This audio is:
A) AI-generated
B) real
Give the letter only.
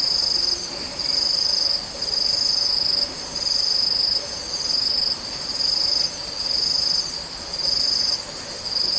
B